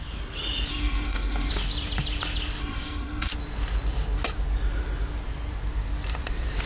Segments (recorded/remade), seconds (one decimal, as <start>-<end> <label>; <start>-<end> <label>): 0.0-0.7 recorded; 0.7-1.5 remade; 1.5-2.6 recorded; 2.6-3.3 remade; 3.3-6.7 recorded